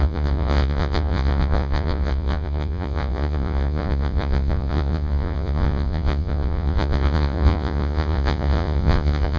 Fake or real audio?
fake